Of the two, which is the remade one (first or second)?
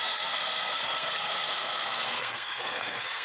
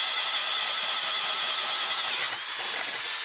first